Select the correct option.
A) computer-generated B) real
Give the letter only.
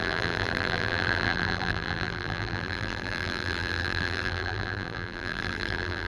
A